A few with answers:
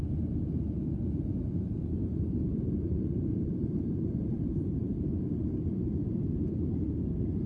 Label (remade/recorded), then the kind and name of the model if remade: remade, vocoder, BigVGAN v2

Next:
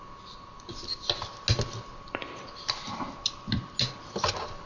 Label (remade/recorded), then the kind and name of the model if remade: recorded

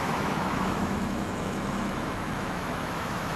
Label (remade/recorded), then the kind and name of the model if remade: remade, autoencoder, DAC-VAE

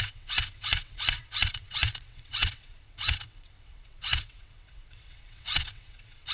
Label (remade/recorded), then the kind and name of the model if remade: remade, vocoder, WaveNeXt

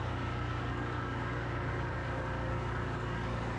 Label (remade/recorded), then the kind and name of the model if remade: remade, codec, DAC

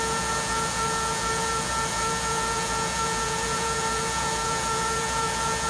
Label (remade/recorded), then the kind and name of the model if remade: remade, vocoder, Vocos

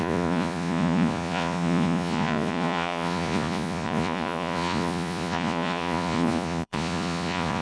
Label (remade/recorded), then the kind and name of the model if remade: remade, vocoder, Vocos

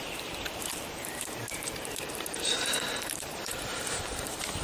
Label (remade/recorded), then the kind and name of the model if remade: remade, vocoder, BigVGAN v2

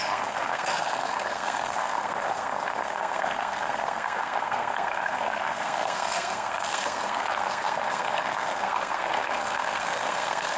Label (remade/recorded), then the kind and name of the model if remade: remade, codec, SNAC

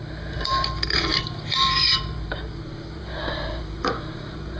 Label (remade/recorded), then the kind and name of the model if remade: remade, vocoder, BigVGAN v2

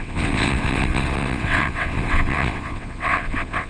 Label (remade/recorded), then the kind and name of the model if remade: remade, vocoder, WaveNeXt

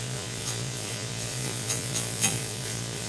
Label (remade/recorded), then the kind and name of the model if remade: remade, vocoder, Vocos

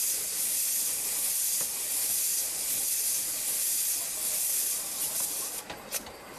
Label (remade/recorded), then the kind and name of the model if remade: recorded